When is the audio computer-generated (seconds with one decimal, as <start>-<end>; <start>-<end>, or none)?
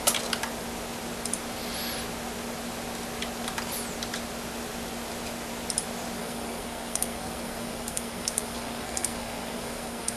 6.2-10.2